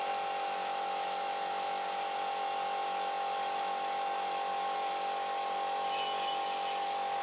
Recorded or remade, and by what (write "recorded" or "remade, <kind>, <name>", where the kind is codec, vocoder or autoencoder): remade, autoencoder, DAC-VAE